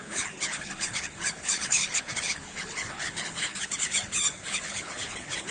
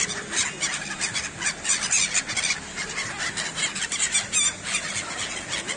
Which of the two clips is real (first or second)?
second